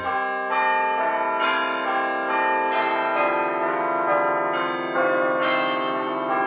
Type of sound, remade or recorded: recorded